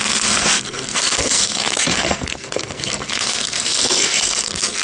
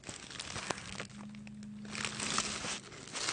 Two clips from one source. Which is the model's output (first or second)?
first